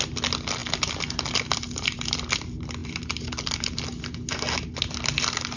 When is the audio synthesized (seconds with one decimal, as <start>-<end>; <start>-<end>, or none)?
none